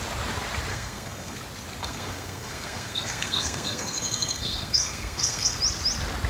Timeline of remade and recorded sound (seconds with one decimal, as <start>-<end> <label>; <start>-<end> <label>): 0.0-0.7 recorded; 0.7-1.4 remade; 1.4-1.8 recorded; 1.8-5.6 remade; 5.6-6.3 recorded